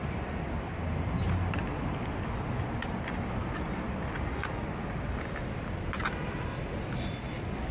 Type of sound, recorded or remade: recorded